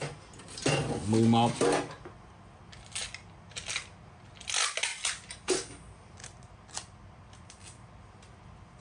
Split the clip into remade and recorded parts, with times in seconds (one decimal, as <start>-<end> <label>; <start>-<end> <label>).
0.0-8.8 recorded

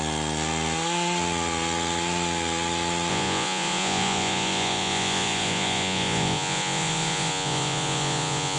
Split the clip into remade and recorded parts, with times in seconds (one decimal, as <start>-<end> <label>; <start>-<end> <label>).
0.0-3.1 recorded; 3.1-8.6 remade

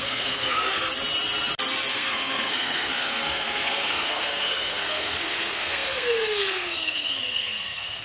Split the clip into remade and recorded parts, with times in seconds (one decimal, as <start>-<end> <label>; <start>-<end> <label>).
0.0-0.9 remade; 0.9-1.9 recorded; 1.9-8.0 remade

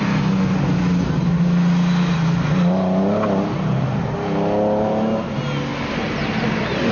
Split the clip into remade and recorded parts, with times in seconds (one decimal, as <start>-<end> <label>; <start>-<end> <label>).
0.0-6.9 recorded

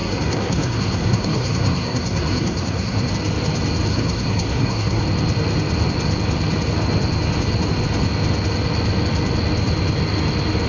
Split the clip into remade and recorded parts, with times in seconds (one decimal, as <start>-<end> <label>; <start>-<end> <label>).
0.0-3.1 remade; 3.1-3.9 recorded; 3.9-5.0 remade; 5.0-10.7 recorded

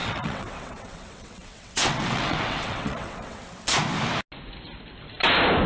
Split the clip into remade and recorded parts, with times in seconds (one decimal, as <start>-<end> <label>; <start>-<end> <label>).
0.0-3.4 remade; 3.4-5.7 recorded

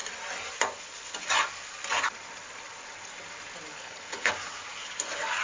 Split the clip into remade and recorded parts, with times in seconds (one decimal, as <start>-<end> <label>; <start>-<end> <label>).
0.0-3.7 recorded; 3.7-4.3 remade; 4.3-5.4 recorded